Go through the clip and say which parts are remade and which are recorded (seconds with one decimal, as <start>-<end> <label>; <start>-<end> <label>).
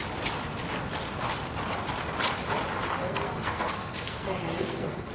0.0-3.0 recorded; 3.0-5.1 remade